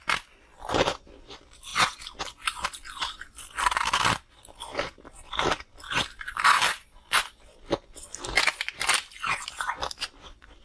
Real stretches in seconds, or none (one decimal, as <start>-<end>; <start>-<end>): 1.7-2.2